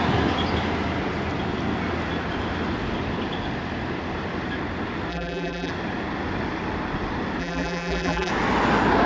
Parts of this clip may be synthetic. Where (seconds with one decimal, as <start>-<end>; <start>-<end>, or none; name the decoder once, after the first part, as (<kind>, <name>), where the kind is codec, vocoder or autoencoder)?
5.1-5.7 (vocoder, BigVGAN v2); 7.4-8.3